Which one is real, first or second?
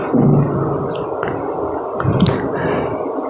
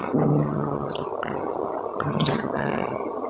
first